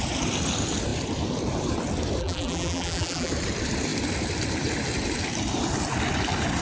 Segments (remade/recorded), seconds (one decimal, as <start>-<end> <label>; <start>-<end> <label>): 0.0-2.2 recorded; 2.2-3.3 remade; 3.3-6.6 recorded